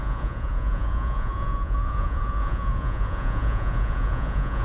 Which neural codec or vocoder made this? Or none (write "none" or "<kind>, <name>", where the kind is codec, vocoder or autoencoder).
vocoder, Vocos